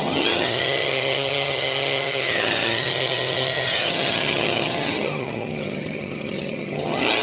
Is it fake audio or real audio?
fake